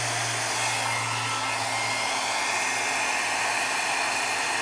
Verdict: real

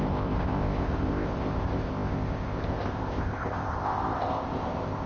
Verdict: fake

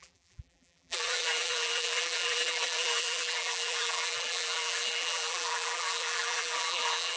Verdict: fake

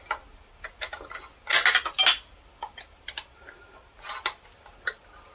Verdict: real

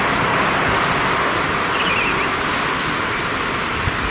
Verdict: real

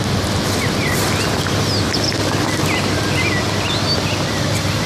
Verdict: real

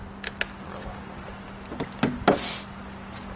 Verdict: real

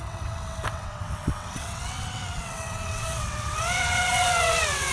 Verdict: fake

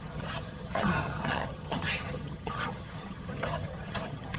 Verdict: fake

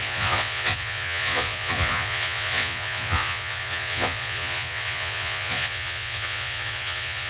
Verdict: fake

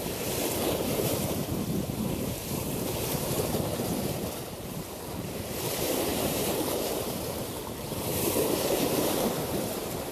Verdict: fake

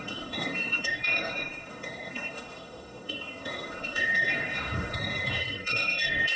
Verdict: fake